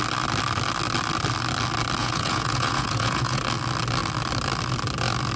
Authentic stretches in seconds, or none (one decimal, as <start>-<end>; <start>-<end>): 0.0-2.0; 3.4-5.4